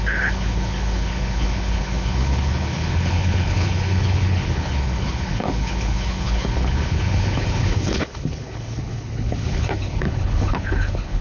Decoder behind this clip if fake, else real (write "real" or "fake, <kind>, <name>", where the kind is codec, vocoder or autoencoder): fake, codec, HILCodec